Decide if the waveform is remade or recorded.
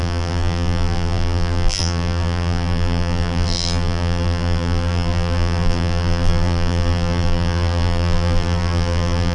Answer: remade